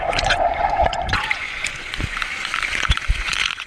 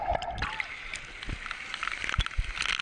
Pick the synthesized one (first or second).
first